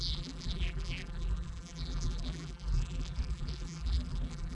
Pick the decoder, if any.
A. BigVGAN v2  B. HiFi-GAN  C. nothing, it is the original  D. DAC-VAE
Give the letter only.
A